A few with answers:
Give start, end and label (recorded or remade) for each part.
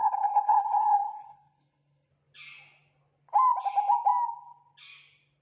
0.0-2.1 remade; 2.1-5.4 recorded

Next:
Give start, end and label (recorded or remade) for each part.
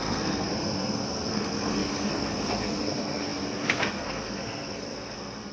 0.0-5.5 remade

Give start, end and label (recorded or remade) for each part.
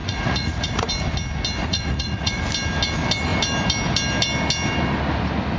0.0-0.9 remade; 0.9-1.6 recorded; 1.6-2.4 remade; 2.4-5.6 recorded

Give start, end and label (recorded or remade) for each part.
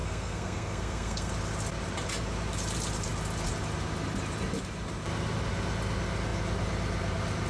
0.0-1.3 remade; 1.3-7.5 recorded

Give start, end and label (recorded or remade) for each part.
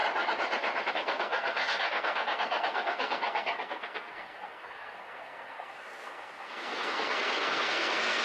0.0-0.9 recorded; 0.9-8.2 remade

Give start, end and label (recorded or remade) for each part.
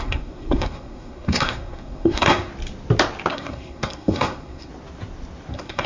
0.0-2.5 remade; 2.5-3.3 recorded; 3.3-4.7 remade; 4.7-5.5 recorded; 5.5-5.9 remade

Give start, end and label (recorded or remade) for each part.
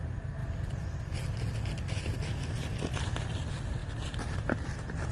0.0-5.1 recorded